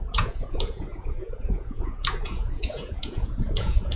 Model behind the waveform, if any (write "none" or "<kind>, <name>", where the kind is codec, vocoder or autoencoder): vocoder, Vocos